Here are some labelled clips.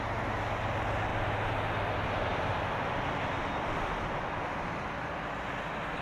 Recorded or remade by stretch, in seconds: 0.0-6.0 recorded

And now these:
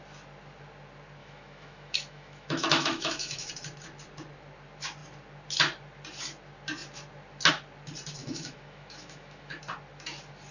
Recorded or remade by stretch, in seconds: 0.0-1.2 recorded; 1.2-3.5 remade; 3.5-8.2 recorded; 8.2-9.6 remade; 9.6-10.5 recorded

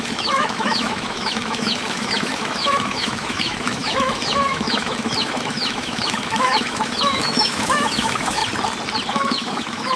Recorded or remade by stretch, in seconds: 0.0-8.4 remade; 8.4-9.1 recorded; 9.1-10.0 remade